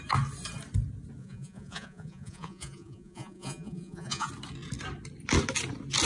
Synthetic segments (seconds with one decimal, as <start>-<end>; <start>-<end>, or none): 1.2-4.3